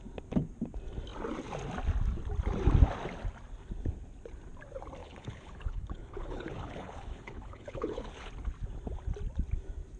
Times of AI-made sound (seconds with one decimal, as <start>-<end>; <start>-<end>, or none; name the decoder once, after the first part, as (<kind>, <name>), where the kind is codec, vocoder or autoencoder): 5.0-8.3 (codec, HILCodec)